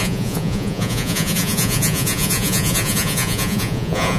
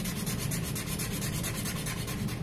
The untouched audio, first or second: second